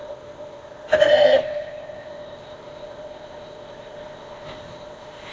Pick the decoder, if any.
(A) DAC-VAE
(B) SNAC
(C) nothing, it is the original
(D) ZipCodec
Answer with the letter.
D